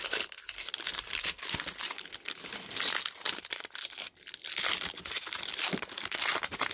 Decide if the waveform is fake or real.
real